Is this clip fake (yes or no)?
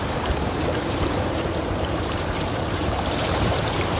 yes